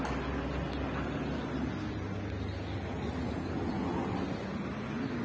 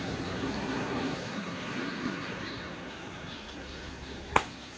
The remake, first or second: second